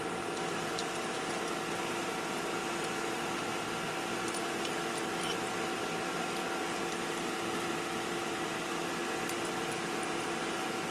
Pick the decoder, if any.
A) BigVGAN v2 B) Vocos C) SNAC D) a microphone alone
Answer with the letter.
D